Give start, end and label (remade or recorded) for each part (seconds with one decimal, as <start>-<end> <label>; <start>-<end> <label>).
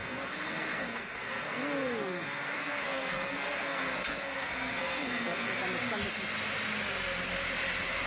0.0-5.6 remade; 5.6-8.1 recorded